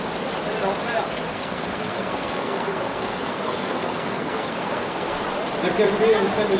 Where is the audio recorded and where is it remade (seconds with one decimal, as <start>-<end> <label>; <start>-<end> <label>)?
0.0-1.3 recorded; 1.3-5.2 remade; 5.2-6.6 recorded